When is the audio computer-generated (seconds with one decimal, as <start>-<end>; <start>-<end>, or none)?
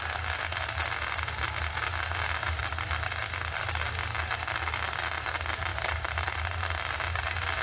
5.7-6.4